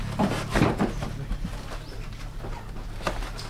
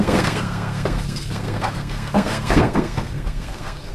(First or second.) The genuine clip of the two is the first